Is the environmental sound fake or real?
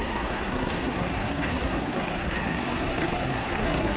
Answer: fake